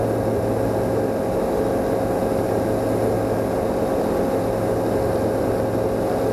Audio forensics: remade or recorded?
recorded